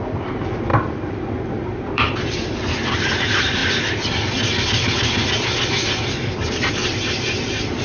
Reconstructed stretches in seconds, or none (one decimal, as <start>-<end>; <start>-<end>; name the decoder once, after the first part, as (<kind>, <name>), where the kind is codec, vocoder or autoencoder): 0.0-3.6 (vocoder, BigVGAN v2); 7.2-7.8